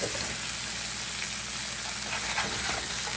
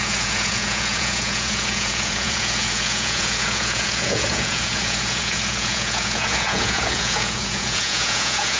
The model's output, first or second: second